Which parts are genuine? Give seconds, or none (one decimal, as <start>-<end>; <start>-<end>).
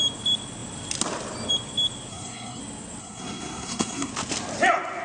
0.0-2.1; 2.6-3.0; 4.1-5.0